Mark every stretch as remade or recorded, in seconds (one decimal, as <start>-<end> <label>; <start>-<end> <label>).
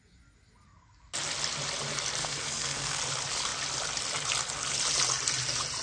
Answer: 0.0-2.2 recorded; 2.2-3.0 remade; 3.0-5.8 recorded